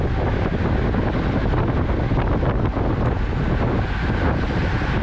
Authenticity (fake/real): real